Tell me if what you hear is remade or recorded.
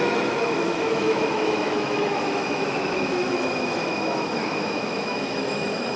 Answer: remade